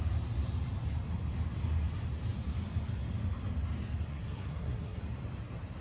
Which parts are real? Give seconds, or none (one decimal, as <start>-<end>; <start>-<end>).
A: 0.0-4.1; 5.0-5.8